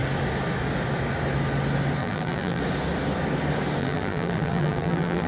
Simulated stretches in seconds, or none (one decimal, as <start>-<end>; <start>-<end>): 2.0-2.6; 3.8-5.3